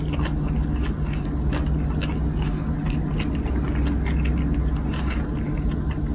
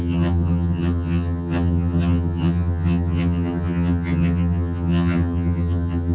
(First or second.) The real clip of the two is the first